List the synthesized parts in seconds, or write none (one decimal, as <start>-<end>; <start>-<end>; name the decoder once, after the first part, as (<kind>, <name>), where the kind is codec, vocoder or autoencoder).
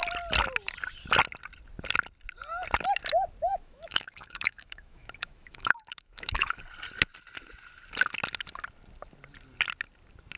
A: 3.5-6.6 (autoencoder, DAC-VAE)